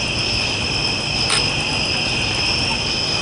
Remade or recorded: recorded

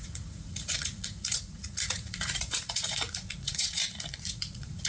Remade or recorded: remade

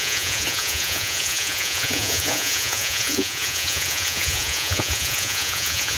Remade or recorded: remade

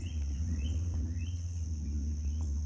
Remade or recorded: remade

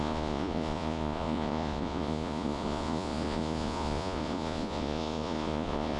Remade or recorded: remade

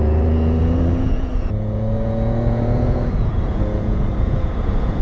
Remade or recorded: remade